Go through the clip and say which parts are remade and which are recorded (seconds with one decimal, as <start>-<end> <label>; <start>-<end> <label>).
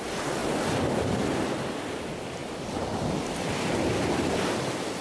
0.0-5.0 recorded